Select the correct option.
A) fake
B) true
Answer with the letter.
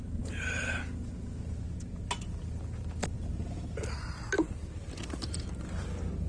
B